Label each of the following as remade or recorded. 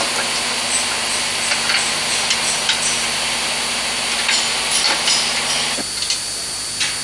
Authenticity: recorded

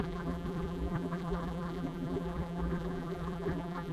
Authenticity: remade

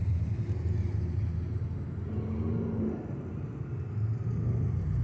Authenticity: recorded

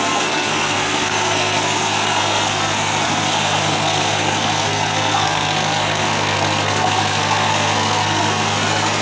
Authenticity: remade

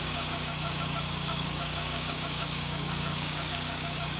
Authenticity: remade